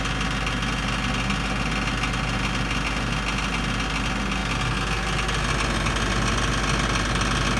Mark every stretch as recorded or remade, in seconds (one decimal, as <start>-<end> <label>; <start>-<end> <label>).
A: 0.0-7.6 recorded